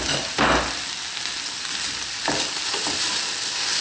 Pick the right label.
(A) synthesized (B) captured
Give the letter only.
A